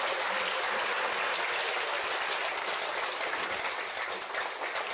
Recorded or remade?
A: remade